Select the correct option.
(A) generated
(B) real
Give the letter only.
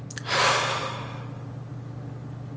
B